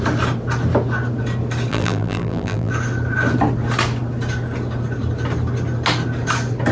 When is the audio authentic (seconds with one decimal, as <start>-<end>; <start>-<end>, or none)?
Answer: 0.0-1.7; 2.7-6.7